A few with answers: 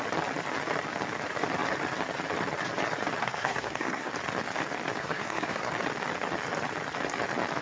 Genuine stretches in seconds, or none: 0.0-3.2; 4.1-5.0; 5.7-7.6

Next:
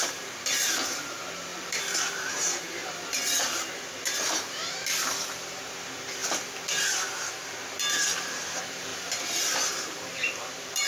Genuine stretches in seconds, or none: none

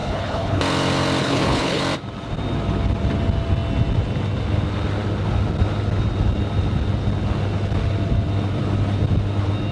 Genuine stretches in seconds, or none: 0.6-1.2; 1.8-9.7

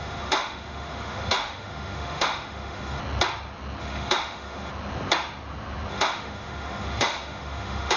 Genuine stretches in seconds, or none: 3.0-3.8; 4.7-5.9